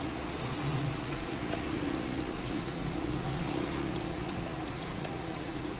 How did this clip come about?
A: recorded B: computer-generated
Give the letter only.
B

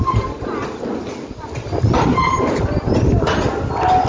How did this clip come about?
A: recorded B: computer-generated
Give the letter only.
A